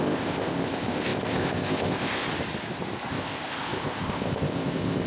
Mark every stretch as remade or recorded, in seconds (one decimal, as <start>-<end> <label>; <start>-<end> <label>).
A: 0.0-2.3 remade; 2.3-3.1 recorded; 3.1-5.1 remade